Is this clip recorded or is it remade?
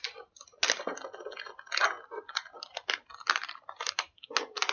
recorded